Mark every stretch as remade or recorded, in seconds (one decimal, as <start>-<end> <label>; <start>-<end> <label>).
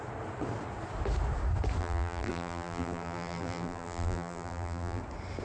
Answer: 0.0-1.8 recorded; 1.8-5.0 remade; 5.0-5.4 recorded